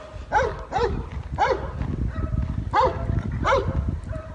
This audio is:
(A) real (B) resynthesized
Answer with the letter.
A